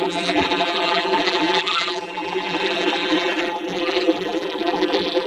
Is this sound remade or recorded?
remade